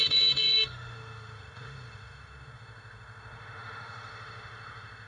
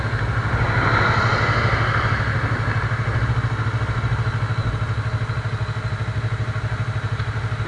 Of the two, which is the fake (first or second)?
first